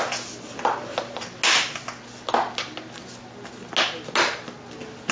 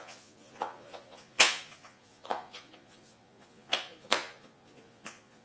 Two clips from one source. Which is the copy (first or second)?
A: second